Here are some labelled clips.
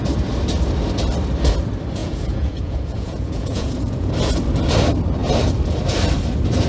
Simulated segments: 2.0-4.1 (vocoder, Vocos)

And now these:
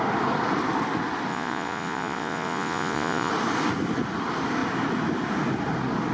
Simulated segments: 1.3-3.3 (vocoder, Vocos)

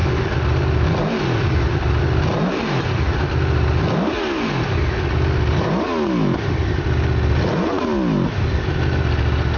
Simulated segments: none